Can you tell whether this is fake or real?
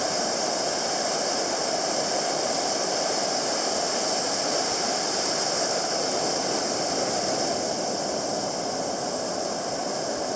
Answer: real